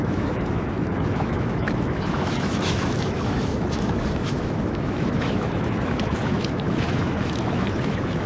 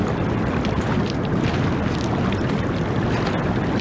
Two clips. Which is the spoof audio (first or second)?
first